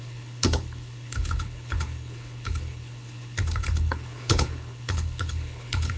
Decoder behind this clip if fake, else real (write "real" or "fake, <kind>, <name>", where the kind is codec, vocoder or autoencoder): fake, codec, HILCodec